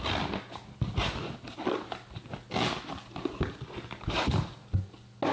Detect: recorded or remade recorded